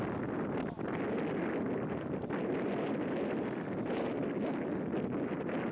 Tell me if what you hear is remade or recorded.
recorded